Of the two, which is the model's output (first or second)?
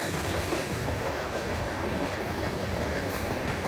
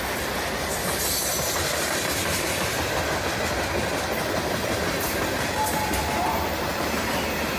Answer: first